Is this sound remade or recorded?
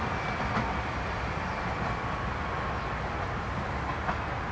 recorded